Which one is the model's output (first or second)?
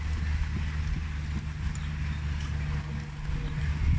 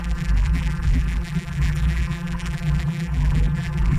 second